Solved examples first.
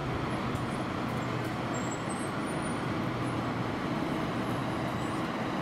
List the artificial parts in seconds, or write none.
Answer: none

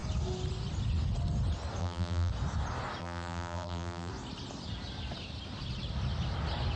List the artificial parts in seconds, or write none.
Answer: 1.8-2.3 (vocoder, BigVGAN v2); 3.0-4.1

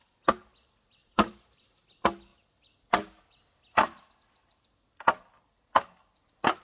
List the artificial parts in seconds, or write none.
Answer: 1.0-1.6 (vocoder, BigVGAN v2)

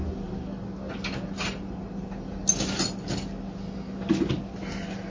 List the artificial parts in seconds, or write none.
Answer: none

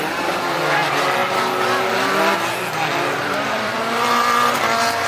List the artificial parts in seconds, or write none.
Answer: 3.2-4.1 (vocoder, BigVGAN v2)

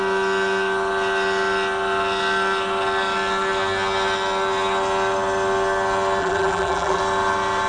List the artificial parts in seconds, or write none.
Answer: 6.2-7.0 (vocoder, BigVGAN v2)